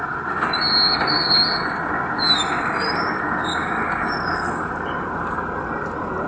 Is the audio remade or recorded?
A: recorded